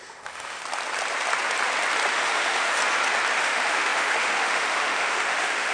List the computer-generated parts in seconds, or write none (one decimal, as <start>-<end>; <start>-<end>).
0.0-0.6; 2.1-2.8; 3.4-5.7